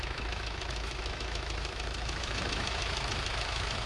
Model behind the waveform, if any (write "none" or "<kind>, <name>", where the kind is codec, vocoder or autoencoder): autoencoder, DAC-VAE